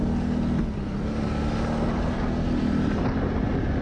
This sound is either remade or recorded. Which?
recorded